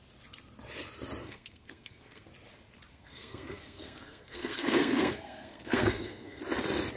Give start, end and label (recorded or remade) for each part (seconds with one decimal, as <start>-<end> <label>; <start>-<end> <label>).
0.0-1.2 recorded; 1.2-2.3 remade; 2.3-2.9 recorded; 2.9-6.4 remade; 6.4-7.0 recorded